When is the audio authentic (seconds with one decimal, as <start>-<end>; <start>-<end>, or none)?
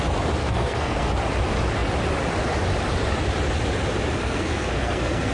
0.0-0.4; 1.1-4.2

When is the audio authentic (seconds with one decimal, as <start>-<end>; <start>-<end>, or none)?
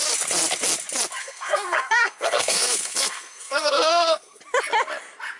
0.0-1.2; 4.4-5.4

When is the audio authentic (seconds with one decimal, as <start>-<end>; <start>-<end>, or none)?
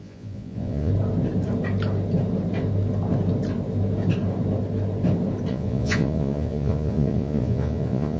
0.9-5.5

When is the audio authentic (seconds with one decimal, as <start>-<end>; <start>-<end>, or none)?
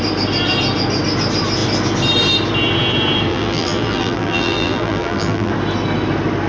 0.0-3.3; 5.5-6.5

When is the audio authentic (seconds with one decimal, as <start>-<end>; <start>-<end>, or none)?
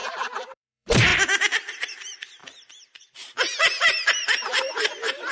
1.1-1.7; 2.4-3.8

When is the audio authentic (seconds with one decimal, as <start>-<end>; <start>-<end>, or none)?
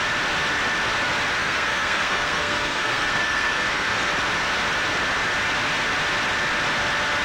0.0-1.4; 4.1-7.2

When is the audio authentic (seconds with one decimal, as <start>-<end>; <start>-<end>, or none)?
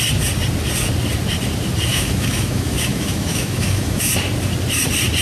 0.0-1.9; 4.1-5.2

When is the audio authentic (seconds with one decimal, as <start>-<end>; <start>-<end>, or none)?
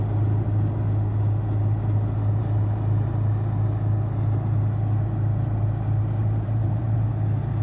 0.0-6.2; 7.1-7.6